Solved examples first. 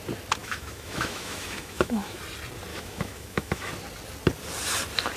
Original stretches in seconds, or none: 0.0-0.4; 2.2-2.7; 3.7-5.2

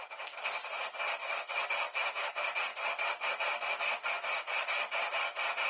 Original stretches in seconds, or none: 0.0-1.2; 2.3-5.7

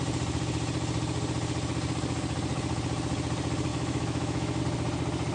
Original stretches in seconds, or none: 0.0-3.7; 4.6-5.3

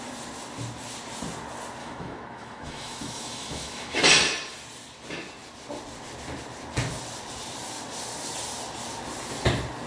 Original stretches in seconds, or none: 0.0-1.8; 4.0-9.9

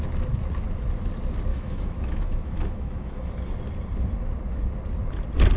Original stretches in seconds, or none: 0.0-1.5; 3.3-5.6

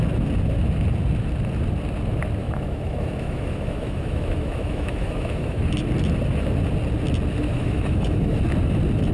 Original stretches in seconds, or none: 0.0-2.4; 5.6-7.5; 8.4-9.1